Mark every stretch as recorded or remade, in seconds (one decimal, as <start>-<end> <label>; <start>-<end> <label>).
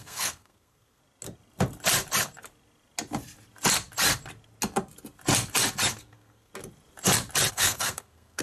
0.0-1.0 remade; 1.0-6.0 recorded; 6.0-6.5 remade; 6.5-7.5 recorded; 7.5-8.4 remade